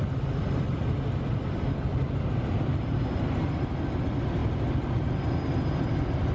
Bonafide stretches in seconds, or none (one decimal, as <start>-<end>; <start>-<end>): 0.0-6.3